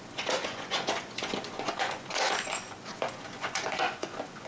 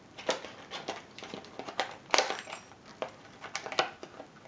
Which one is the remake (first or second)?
first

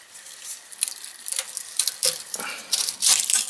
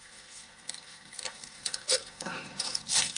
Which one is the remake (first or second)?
second